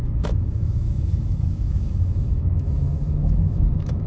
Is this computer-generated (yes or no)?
yes